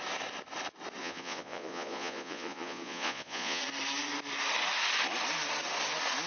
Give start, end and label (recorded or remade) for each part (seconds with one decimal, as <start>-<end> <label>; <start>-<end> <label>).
0.0-1.0 recorded; 1.0-3.6 remade; 3.6-6.3 recorded